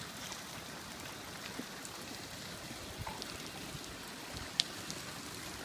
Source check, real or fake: real